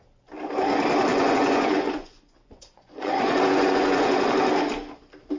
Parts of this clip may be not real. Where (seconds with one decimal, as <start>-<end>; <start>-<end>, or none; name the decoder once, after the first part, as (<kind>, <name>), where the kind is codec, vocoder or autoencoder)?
1.1-4.3 (vocoder, Vocos)